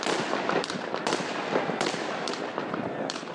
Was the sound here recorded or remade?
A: remade